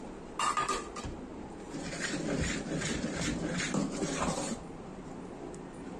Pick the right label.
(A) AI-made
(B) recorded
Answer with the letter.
A